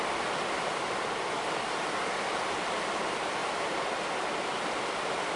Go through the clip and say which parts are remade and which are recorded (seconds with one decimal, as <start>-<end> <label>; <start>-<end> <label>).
0.0-5.4 recorded